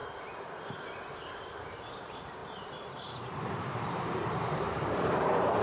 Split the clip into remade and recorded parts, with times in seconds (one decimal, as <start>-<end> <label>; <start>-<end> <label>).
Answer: 0.0-1.2 recorded; 1.2-5.6 remade